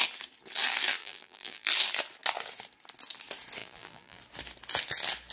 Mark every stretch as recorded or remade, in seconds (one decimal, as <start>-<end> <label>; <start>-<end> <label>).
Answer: 0.0-1.0 recorded; 1.0-1.7 remade; 1.7-3.6 recorded; 3.6-4.2 remade; 4.2-5.3 recorded